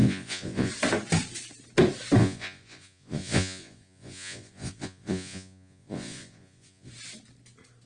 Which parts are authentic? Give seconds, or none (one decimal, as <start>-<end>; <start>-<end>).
0.7-2.2; 6.9-7.9